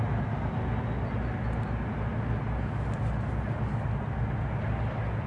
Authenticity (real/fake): real